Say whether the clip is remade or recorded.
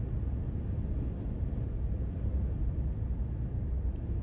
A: recorded